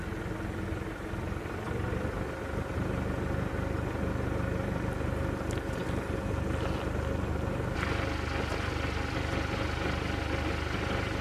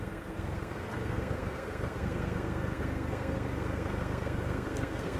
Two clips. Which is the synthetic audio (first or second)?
second